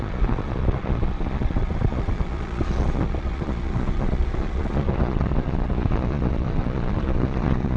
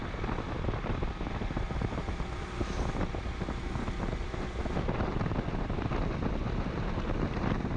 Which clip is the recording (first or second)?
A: second